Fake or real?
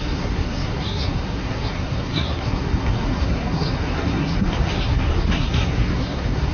fake